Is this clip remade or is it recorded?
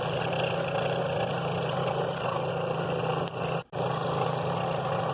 recorded